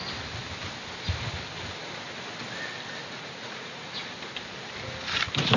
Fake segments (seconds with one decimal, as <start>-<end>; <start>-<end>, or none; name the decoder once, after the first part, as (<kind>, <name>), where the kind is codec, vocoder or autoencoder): 3.0-4.0 (vocoder, Vocos)